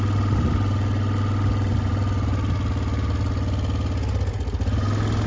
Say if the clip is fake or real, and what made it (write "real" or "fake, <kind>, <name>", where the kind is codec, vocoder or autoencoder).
real